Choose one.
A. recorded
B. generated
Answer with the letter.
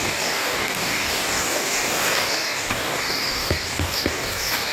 B